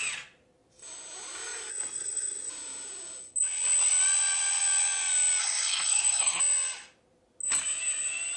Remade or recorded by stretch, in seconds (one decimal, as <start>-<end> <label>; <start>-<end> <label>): 0.0-1.7 recorded; 1.7-2.5 remade; 2.5-5.4 recorded; 5.4-6.4 remade; 6.4-8.4 recorded